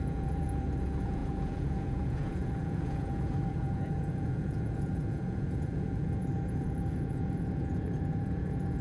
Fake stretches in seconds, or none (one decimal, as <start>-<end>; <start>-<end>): 0.0-8.8